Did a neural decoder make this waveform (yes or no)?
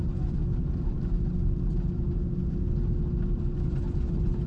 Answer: no